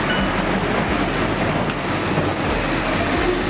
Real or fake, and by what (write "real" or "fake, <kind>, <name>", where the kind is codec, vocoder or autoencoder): real